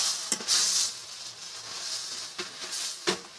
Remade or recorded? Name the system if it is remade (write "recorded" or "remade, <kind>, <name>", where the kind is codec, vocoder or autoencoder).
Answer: recorded